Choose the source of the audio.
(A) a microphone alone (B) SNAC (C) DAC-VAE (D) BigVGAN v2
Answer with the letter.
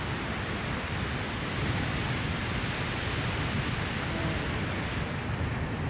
A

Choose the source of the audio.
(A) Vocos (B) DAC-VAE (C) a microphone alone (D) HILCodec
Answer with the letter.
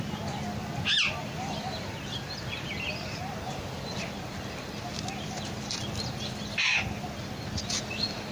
C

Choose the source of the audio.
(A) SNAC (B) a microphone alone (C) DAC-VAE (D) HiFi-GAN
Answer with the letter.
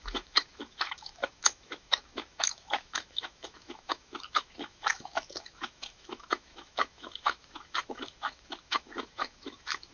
C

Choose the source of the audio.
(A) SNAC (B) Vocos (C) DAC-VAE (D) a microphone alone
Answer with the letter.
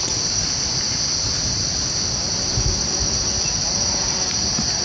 D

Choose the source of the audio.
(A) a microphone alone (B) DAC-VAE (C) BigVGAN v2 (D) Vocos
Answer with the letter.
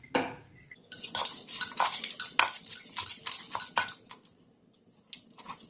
A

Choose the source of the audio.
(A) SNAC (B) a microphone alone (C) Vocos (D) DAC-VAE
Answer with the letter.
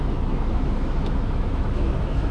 D